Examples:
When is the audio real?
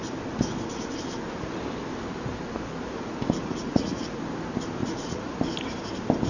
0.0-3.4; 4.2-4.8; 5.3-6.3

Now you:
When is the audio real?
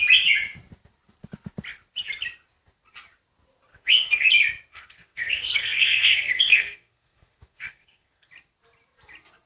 0.0-3.7; 4.3-4.7; 8.3-9.5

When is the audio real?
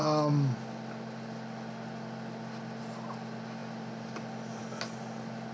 0.0-5.5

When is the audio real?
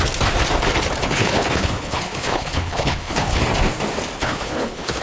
0.0-1.0; 3.4-4.2